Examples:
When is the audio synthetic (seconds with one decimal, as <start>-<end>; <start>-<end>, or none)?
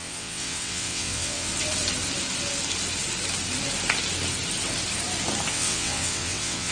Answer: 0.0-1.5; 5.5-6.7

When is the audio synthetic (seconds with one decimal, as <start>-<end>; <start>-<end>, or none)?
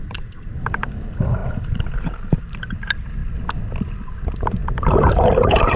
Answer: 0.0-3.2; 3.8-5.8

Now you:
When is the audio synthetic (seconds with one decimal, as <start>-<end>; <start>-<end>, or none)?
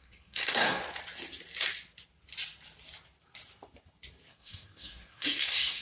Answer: 0.0-0.8; 4.3-5.8